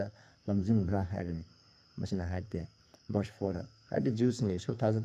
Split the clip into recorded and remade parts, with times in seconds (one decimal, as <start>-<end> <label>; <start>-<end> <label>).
0.0-1.5 remade; 1.5-2.1 recorded; 2.1-5.0 remade